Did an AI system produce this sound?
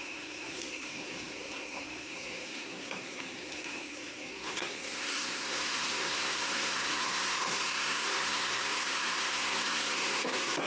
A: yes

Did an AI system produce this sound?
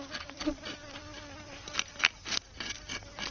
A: no